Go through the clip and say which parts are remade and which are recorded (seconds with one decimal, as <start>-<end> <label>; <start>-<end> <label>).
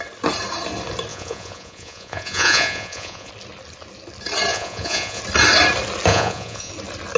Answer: 0.0-1.1 recorded; 1.1-3.3 remade; 3.3-4.5 recorded; 4.5-5.2 remade; 5.2-6.1 recorded; 6.1-6.7 remade; 6.7-7.2 recorded